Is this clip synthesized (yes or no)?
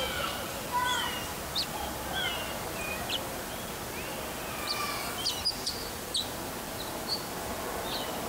no